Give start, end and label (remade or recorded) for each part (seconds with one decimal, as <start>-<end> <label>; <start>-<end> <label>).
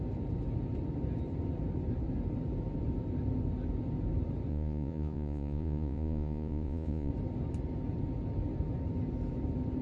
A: 0.0-4.5 recorded; 4.5-7.1 remade; 7.1-9.8 recorded